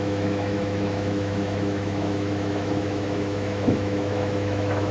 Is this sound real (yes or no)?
no